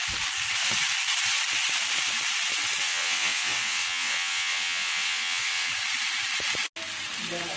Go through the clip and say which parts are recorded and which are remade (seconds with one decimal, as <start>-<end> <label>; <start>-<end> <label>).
0.0-2.8 recorded; 2.8-5.7 remade; 5.7-7.6 recorded